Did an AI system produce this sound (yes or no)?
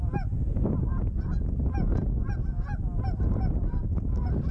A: no